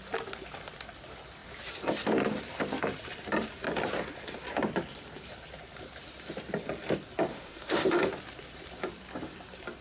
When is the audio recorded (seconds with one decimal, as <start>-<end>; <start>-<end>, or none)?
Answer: 0.0-7.3; 8.0-9.8